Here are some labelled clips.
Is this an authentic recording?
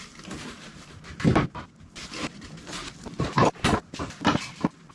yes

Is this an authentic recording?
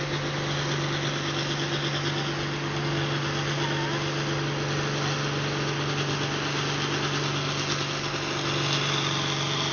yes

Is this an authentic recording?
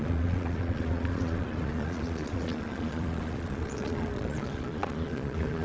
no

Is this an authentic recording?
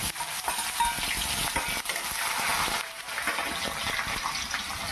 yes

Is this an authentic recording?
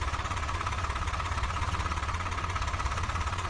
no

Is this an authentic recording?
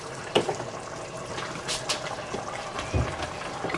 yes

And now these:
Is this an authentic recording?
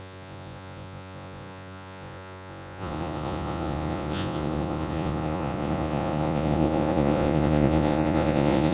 no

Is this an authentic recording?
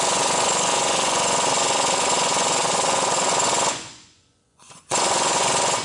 no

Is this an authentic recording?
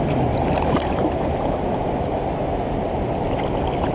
yes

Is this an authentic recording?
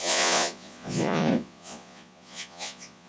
no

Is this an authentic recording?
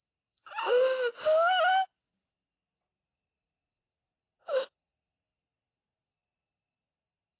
yes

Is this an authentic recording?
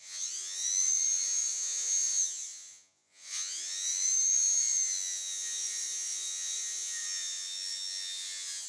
no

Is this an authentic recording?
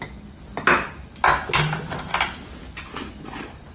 yes